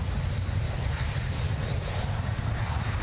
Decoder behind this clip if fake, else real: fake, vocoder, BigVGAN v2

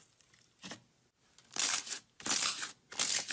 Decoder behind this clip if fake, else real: real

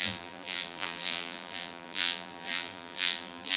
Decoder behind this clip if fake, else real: fake, vocoder, BigVGAN v2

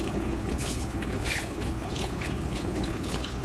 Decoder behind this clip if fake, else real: fake, codec, HILCodec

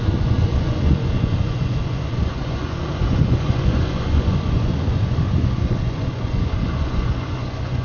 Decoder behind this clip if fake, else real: fake, vocoder, Vocos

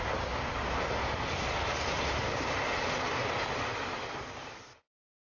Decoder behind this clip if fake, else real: real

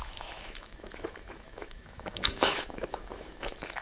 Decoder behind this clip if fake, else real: fake, autoencoder, DAC-VAE